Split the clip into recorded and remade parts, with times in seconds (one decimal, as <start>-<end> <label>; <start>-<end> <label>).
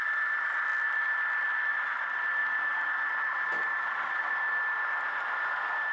0.0-5.9 recorded